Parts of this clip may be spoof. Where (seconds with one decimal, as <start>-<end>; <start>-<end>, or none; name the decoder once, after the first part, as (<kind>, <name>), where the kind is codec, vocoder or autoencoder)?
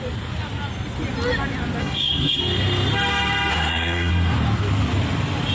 1.8-2.4 (codec, SNAC); 3.5-4.1